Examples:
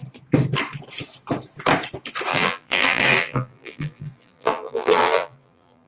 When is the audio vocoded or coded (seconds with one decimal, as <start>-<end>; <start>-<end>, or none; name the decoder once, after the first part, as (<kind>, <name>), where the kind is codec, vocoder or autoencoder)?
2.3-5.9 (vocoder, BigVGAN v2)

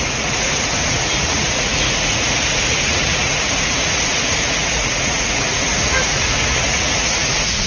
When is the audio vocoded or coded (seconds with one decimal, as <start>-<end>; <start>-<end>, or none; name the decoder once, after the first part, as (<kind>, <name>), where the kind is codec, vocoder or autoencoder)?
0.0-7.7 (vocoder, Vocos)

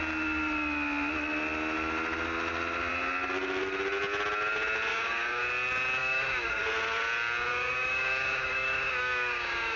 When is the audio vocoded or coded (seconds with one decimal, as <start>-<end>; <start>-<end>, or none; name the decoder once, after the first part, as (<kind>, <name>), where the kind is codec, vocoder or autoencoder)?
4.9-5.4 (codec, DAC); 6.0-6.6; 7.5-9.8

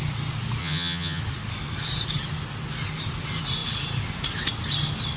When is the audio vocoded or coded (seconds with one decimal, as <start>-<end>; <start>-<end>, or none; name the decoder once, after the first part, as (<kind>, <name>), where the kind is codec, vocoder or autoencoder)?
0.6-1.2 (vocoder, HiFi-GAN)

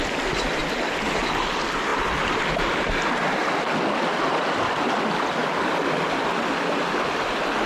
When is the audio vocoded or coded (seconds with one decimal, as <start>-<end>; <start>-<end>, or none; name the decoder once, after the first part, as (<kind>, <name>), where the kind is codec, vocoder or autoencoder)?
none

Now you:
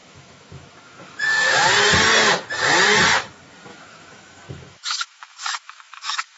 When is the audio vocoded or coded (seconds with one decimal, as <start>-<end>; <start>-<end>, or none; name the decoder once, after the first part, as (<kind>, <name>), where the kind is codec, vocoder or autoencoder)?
0.0-1.7 (autoencoder, DAC-VAE); 3.7-6.4

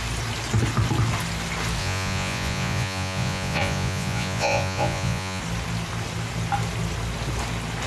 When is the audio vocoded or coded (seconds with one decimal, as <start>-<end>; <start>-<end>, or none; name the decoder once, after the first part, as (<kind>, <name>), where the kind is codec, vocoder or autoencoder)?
1.8-5.4 (vocoder, Vocos)